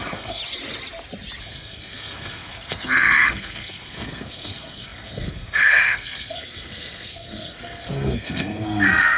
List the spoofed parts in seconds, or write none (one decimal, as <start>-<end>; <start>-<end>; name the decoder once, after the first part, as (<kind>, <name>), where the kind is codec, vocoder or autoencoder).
0.0-0.4 (codec, SNAC); 1.4-9.2